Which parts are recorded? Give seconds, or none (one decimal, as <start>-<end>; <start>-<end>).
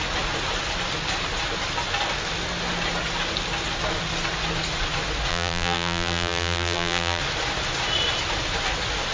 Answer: 0.0-5.3; 7.2-9.1